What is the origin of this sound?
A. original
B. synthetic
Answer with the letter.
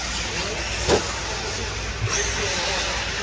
A